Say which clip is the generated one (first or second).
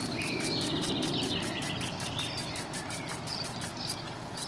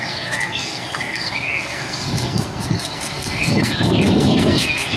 second